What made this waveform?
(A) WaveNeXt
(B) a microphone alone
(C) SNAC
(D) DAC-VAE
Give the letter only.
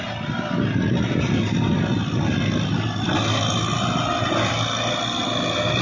B